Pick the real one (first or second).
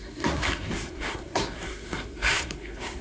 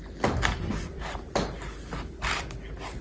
second